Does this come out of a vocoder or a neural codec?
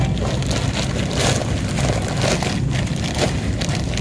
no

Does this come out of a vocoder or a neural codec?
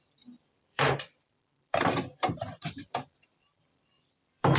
yes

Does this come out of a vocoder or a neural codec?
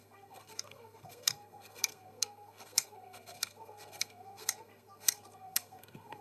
yes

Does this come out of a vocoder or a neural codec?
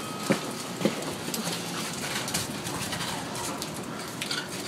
no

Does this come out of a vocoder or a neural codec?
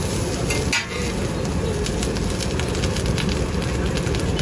no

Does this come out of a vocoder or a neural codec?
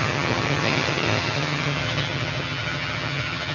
yes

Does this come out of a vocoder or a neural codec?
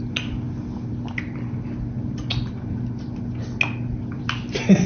no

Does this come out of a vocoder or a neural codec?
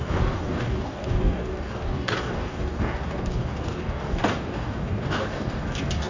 yes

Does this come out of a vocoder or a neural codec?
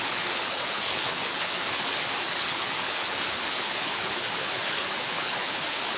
yes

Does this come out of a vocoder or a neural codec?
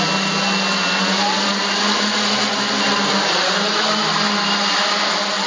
no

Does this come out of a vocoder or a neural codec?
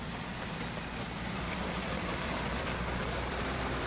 yes